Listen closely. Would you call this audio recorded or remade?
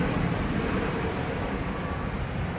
recorded